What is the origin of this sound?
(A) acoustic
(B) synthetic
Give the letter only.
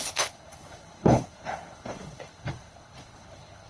B